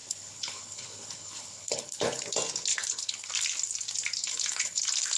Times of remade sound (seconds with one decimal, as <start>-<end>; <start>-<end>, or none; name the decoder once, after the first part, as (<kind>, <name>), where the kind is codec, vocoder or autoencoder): 0.0-2.2 (codec, HILCodec); 2.7-3.3; 4.2-4.8